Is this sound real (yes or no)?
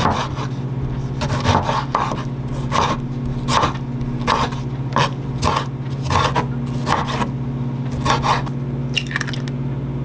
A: yes